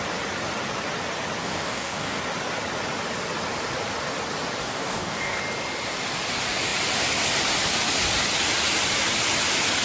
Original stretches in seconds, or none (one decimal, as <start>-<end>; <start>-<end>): 0.0-1.4; 2.2-4.6; 5.4-9.8